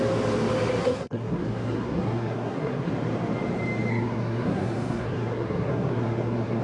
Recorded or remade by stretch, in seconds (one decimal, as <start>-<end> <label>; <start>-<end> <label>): 0.0-0.8 recorded; 0.8-2.9 remade; 2.9-3.9 recorded; 3.9-6.6 remade